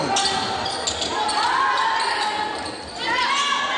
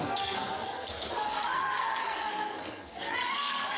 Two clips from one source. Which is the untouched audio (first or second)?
first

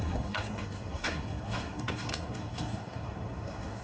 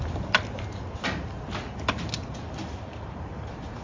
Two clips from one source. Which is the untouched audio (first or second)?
second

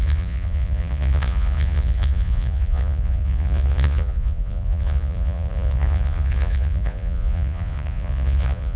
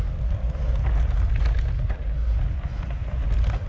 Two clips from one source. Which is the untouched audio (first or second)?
second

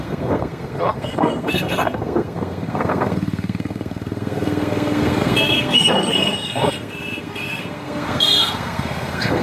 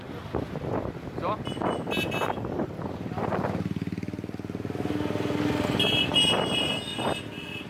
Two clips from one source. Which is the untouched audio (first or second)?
second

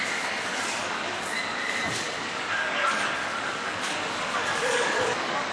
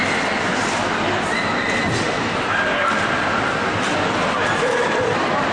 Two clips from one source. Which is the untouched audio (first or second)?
second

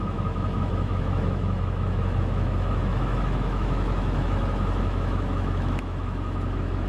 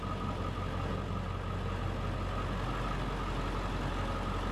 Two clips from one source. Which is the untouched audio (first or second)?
second